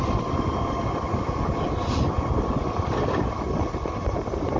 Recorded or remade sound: recorded